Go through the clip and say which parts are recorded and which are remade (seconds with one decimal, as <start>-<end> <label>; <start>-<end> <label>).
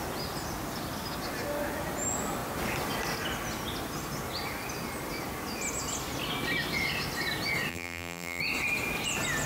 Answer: 0.0-7.7 recorded; 7.7-8.4 remade; 8.4-9.5 recorded